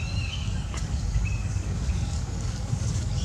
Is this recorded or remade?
remade